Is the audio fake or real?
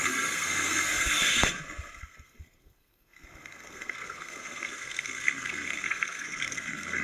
fake